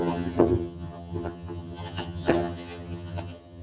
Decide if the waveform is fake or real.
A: fake